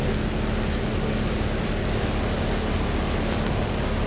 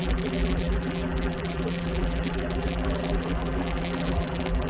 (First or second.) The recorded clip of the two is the first